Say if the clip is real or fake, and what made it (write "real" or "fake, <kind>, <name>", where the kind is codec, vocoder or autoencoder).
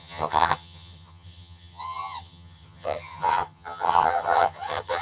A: fake, vocoder, HiFi-GAN